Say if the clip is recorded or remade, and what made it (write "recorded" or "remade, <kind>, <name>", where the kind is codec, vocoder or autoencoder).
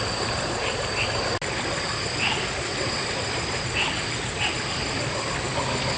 recorded